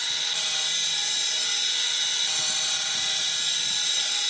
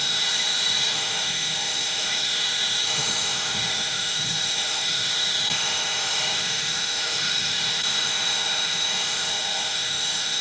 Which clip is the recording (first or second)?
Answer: first